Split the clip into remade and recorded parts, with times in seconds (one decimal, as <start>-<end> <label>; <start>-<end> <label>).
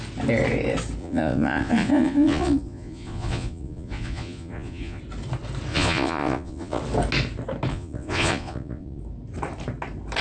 0.0-1.0 recorded; 1.0-5.0 remade; 5.0-5.7 recorded; 5.7-6.8 remade; 6.8-7.7 recorded; 7.7-9.0 remade; 9.0-10.2 recorded